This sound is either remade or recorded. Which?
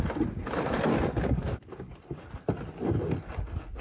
recorded